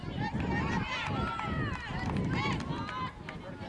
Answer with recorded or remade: recorded